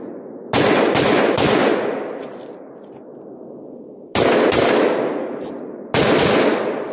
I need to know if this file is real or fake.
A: real